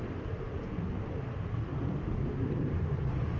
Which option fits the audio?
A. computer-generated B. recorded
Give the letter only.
B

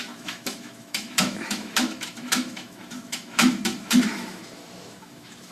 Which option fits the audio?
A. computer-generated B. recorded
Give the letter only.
A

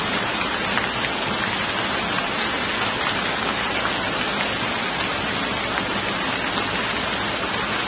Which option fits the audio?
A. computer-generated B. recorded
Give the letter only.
B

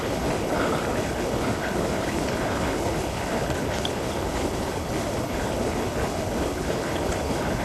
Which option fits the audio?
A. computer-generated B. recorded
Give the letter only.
A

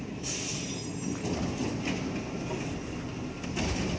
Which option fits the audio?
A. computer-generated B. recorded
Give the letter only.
B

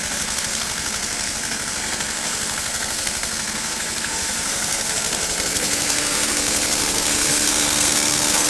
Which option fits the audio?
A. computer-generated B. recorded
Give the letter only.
A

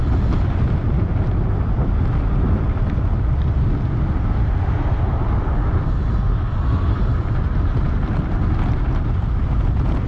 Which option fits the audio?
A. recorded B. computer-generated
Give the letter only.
A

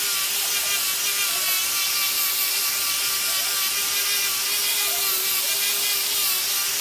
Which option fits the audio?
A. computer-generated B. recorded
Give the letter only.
B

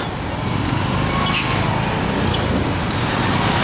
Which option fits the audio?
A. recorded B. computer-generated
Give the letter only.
A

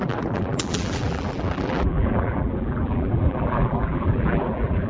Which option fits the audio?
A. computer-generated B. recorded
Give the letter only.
A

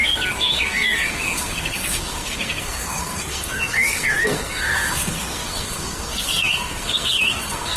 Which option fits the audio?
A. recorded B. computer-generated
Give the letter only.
B